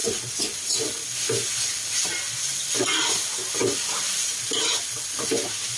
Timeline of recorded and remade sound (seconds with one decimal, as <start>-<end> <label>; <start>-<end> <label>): 0.0-5.8 recorded